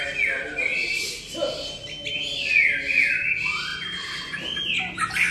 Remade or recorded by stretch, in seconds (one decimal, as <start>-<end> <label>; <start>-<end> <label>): 0.0-5.3 recorded